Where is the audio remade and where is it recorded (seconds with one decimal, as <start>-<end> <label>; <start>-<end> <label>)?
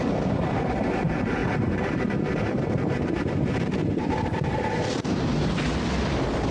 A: 0.0-1.4 recorded; 1.4-5.3 remade; 5.3-6.5 recorded